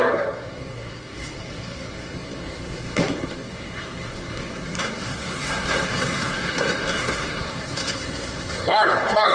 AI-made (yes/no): yes